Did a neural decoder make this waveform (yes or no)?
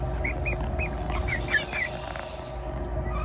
no